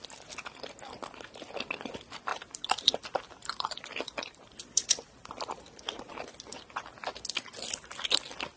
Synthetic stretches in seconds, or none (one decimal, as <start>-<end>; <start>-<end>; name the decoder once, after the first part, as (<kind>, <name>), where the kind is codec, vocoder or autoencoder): 2.3-6.1 (vocoder, BigVGAN v2)